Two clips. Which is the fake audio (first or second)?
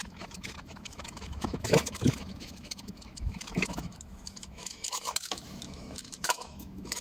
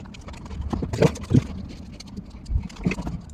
first